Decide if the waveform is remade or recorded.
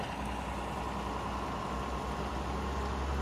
recorded